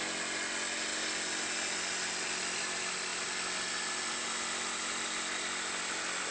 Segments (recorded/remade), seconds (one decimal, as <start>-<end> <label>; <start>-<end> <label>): 0.0-6.3 recorded